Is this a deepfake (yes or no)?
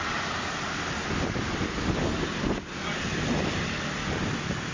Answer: no